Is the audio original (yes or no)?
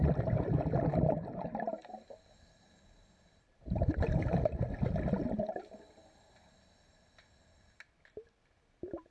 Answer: yes